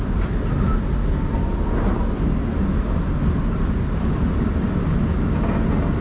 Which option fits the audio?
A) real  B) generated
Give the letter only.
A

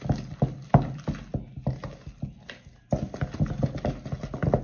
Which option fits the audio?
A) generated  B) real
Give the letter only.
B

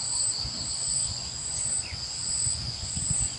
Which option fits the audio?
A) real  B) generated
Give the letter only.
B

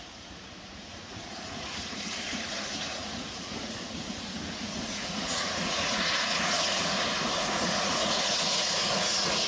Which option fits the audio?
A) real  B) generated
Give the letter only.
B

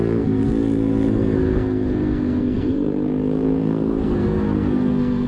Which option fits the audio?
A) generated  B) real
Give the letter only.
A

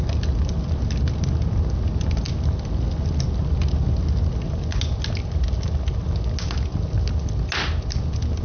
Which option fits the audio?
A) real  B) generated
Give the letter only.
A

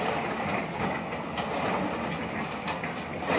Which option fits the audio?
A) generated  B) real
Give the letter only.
B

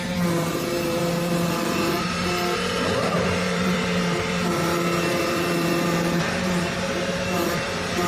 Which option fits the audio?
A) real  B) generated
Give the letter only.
B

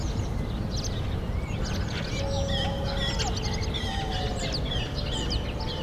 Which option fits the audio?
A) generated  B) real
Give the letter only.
B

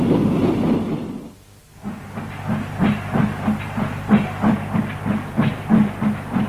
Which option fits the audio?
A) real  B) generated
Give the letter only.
A